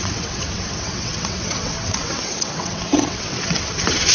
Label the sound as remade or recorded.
remade